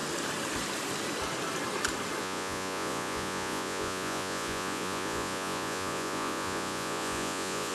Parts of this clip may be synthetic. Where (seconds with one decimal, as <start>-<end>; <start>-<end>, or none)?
2.2-7.7